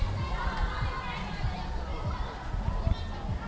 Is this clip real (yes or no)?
yes